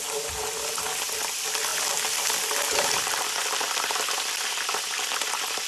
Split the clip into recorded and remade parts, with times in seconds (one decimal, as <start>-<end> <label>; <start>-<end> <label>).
0.0-1.7 recorded; 1.7-5.1 remade; 5.1-5.7 recorded